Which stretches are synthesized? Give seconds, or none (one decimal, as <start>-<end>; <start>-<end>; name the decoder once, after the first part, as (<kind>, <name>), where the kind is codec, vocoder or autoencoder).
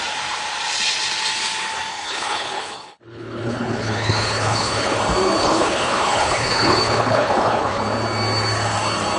1.9-5.0 (codec, HILCodec); 5.4-7.8